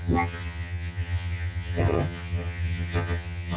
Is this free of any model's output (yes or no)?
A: no